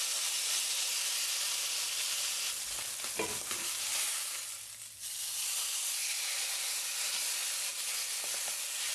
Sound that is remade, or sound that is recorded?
recorded